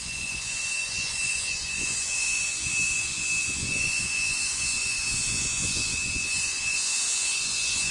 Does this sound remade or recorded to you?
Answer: remade